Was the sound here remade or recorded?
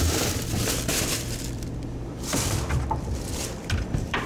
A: remade